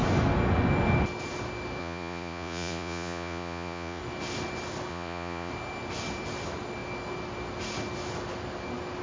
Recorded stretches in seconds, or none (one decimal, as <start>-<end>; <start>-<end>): 0.0-1.8; 4.0-4.9; 5.5-9.0